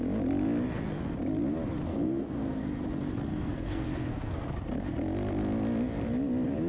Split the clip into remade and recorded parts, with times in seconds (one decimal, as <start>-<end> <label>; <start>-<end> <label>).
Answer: 0.0-1.9 recorded; 1.9-2.8 remade; 2.8-3.3 recorded; 3.3-4.5 remade; 4.5-6.7 recorded